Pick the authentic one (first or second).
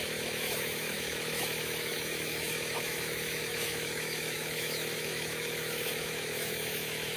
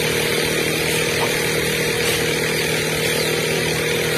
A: second